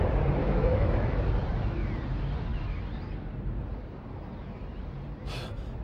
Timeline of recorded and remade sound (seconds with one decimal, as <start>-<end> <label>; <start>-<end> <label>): 0.0-0.4 recorded; 0.4-1.2 remade; 1.2-5.8 recorded